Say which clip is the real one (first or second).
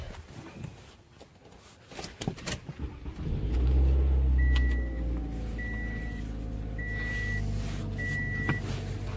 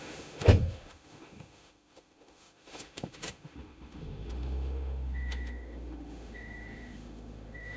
first